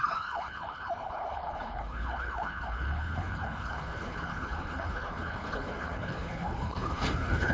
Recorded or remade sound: remade